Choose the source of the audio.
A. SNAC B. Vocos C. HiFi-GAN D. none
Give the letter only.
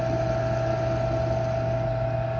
D